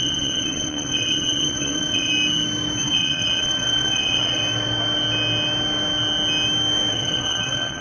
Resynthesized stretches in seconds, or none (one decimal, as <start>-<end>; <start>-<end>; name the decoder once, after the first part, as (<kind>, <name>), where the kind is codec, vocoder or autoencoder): 0.0-2.1 (vocoder, WaveNeXt); 2.8-4.4; 6.9-7.8